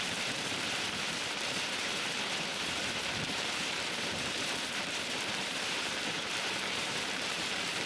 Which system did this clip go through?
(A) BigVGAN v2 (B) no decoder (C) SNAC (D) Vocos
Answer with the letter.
A